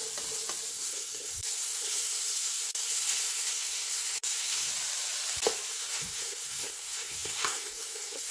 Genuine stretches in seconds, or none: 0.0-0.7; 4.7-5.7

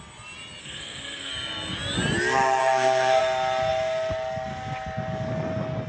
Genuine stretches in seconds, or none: 0.0-0.6; 1.3-2.6; 3.2-5.9

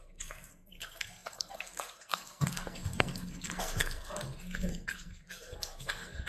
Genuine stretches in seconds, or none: none

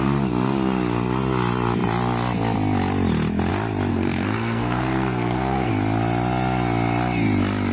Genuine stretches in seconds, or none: 0.0-3.9; 5.7-7.7

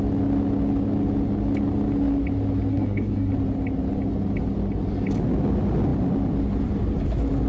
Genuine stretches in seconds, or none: 0.0-2.7; 3.3-7.5